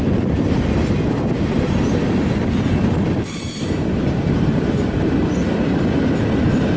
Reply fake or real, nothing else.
fake